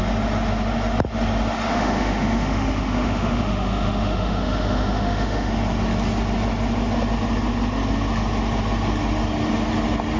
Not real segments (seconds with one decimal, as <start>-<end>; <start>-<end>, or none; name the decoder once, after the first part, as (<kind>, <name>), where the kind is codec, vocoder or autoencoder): 1.7-5.5 (autoencoder, DAC-VAE)